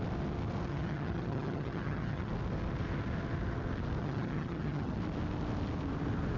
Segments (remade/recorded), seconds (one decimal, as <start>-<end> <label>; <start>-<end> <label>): 0.0-0.7 recorded; 0.7-2.3 remade; 2.3-4.0 recorded; 4.0-5.0 remade; 5.0-6.4 recorded